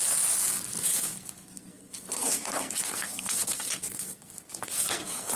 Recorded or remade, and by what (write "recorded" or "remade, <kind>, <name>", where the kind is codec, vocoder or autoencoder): remade, codec, SNAC